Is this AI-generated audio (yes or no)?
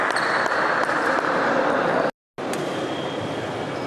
no